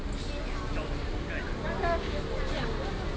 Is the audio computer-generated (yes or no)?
no